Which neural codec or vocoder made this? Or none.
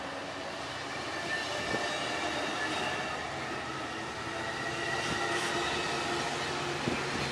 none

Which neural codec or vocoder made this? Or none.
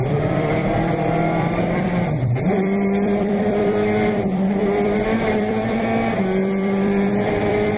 vocoder, BigVGAN v2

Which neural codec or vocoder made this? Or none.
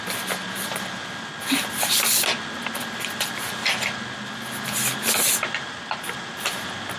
none